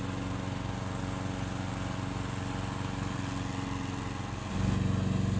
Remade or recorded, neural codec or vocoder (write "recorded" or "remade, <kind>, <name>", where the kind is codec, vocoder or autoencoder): recorded